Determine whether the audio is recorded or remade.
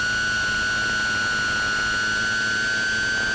recorded